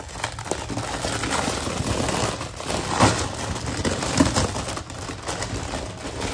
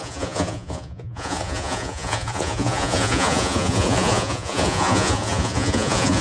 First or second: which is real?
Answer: first